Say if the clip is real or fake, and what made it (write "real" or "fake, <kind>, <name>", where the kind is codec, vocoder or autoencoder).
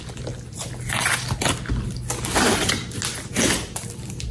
real